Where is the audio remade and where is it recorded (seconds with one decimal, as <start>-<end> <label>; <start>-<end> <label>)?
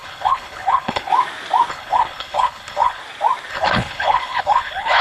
0.0-1.1 remade; 1.1-1.7 recorded; 1.7-3.0 remade; 3.0-3.5 recorded; 3.5-5.0 remade